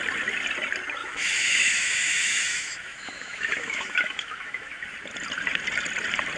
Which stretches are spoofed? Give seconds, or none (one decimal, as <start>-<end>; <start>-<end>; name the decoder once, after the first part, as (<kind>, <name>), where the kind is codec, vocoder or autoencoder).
1.0-4.8 (autoencoder, DAC-VAE)